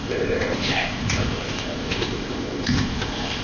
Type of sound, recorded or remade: remade